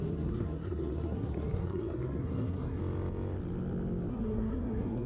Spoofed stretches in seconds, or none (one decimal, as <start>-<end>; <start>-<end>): 0.0-2.8; 4.1-5.1